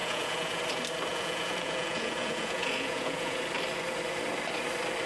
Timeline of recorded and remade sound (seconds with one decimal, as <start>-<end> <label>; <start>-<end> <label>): 0.0-0.6 remade; 0.6-1.1 recorded; 1.1-3.4 remade; 3.4-5.1 recorded